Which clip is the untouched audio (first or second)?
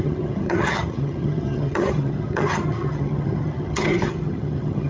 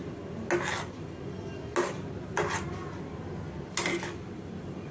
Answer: second